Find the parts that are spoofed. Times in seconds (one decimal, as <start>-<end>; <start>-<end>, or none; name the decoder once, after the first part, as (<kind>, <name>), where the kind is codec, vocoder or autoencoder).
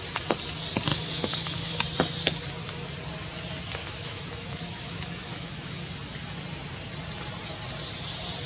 0.9-1.8 (autoencoder, DAC-VAE); 3.8-5.7